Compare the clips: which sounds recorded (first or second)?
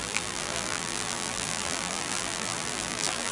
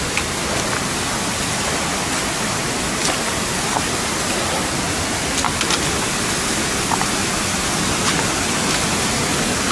second